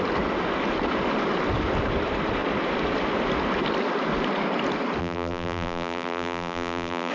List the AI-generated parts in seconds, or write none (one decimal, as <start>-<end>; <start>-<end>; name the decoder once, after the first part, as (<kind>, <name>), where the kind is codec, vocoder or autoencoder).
5.0-7.1 (vocoder, BigVGAN v2)